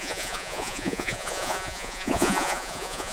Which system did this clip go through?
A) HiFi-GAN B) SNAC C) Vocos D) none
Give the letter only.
C